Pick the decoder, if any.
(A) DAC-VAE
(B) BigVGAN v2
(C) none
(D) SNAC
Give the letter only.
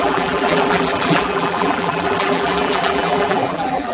B